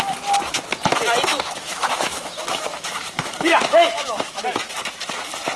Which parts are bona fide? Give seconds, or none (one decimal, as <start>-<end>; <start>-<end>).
0.0-1.3; 4.7-5.6